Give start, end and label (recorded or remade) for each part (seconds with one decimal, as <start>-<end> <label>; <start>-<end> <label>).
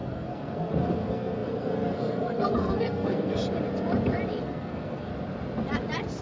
0.0-3.4 remade; 3.4-4.4 recorded; 4.4-5.1 remade; 5.1-6.2 recorded